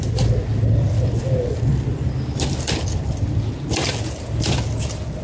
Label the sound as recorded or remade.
recorded